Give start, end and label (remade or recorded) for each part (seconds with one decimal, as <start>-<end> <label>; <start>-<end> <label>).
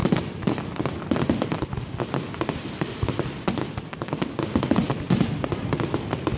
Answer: 0.0-6.4 recorded